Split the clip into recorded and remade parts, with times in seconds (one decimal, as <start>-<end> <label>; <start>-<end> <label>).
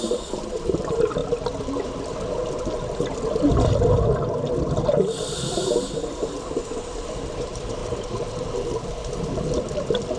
0.0-1.2 remade; 1.2-5.5 recorded; 5.5-10.2 remade